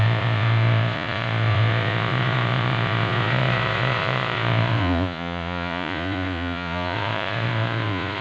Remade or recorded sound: remade